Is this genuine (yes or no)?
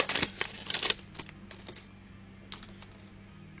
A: yes